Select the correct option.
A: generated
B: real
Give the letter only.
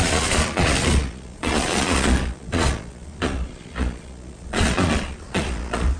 A